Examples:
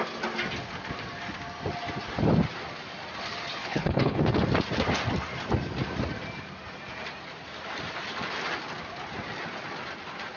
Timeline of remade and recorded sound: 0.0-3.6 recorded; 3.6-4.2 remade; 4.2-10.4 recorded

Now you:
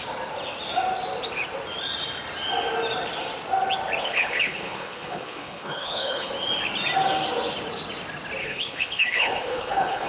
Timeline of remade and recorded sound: 0.0-4.0 recorded; 4.0-6.3 remade; 6.3-8.4 recorded; 8.4-10.1 remade

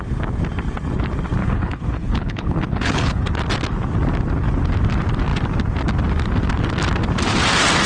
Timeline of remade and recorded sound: 0.0-1.4 recorded; 1.4-3.3 remade; 3.3-7.9 recorded

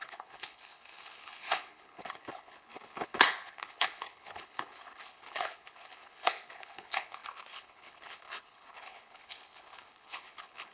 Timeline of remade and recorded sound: 0.0-10.7 remade